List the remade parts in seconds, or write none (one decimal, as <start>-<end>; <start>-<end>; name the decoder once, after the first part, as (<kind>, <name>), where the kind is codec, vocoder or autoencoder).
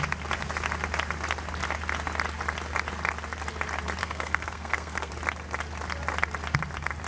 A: 4.0-5.1 (codec, SNAC)